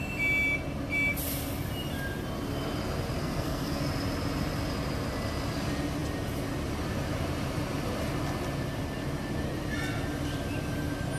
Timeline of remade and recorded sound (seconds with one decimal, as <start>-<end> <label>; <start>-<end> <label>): 0.0-3.2 recorded; 3.2-3.8 remade; 3.8-11.2 recorded